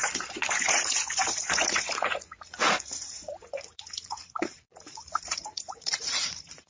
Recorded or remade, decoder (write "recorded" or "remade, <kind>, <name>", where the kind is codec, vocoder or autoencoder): remade, vocoder, Vocos